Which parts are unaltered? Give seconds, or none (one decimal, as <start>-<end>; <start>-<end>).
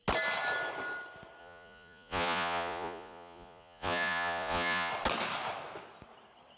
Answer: 0.0-1.4; 4.9-6.6